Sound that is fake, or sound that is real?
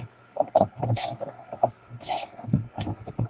fake